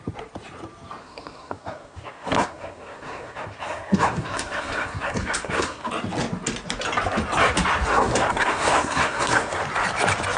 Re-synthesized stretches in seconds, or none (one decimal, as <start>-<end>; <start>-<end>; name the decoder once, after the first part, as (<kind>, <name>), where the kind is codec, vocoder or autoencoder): 1.0-5.9 (codec, SNAC); 7.9-9.6